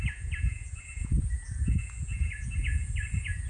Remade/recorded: remade